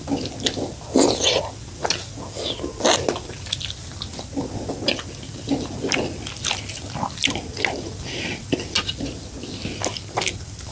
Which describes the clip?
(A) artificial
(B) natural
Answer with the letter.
B